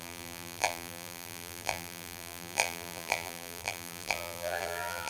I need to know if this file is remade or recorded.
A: remade